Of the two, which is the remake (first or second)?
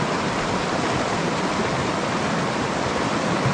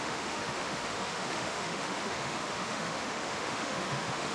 second